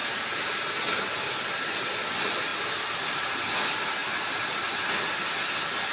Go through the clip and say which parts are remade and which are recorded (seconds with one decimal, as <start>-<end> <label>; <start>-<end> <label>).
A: 0.0-1.2 remade; 1.2-2.5 recorded; 2.5-3.3 remade; 3.3-4.0 recorded; 4.0-5.9 remade